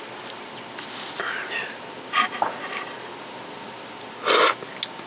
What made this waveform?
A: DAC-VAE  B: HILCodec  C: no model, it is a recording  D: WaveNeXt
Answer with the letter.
C